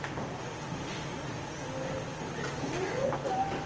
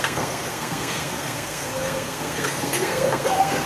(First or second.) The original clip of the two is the first